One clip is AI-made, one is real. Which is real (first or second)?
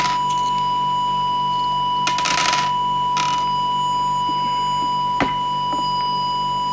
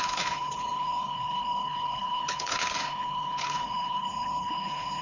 first